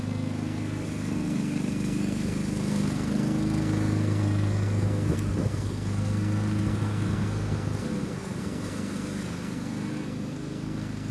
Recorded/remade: remade